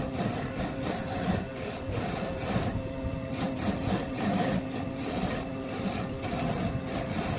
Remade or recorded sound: recorded